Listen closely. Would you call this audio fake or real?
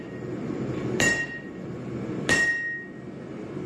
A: real